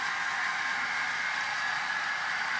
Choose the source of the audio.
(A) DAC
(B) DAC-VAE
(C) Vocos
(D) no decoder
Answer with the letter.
D